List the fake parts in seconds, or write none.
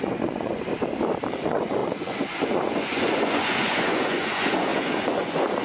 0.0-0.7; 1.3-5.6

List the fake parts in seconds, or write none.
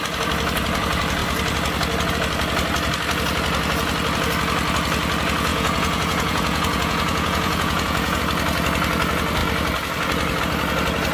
5.5-8.2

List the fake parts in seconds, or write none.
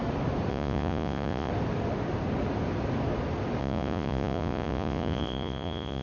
0.5-1.5; 3.6-6.0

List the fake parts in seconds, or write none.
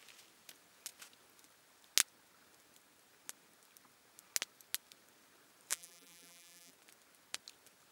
5.7-6.7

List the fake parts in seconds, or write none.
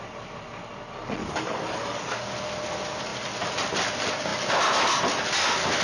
1.2-2.1